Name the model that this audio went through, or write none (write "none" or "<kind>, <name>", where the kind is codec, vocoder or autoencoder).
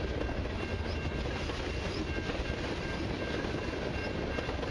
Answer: none